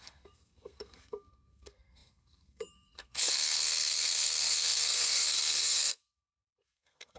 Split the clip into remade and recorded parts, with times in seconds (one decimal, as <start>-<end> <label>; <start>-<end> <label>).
0.0-7.2 remade